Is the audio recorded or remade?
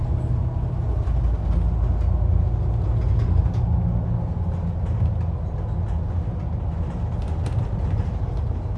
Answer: recorded